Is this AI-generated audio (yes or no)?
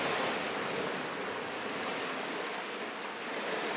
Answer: no